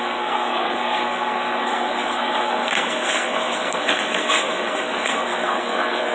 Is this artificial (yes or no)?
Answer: yes